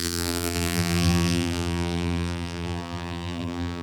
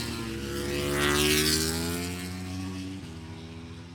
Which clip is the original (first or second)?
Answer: second